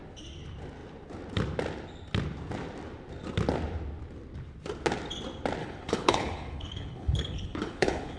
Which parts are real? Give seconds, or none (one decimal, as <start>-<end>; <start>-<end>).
0.0-5.6

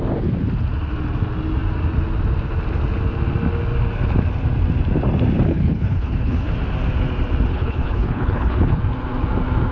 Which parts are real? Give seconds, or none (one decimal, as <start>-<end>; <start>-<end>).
0.0-5.5; 6.5-7.5; 8.8-9.7

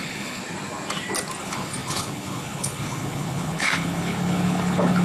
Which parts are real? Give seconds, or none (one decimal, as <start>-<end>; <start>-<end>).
0.4-1.4

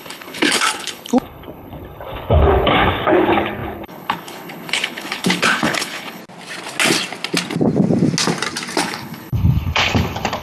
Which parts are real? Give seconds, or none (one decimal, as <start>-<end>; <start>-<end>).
6.2-8.8

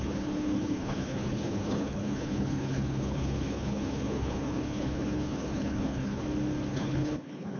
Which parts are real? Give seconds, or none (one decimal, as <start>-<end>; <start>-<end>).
6.2-6.7

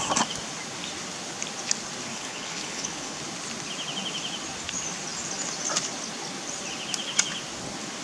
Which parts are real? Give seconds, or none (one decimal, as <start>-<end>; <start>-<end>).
0.0-2.1; 3.2-8.0

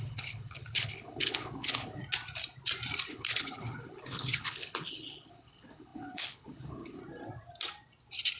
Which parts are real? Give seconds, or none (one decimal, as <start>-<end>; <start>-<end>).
2.0-3.1; 7.0-8.4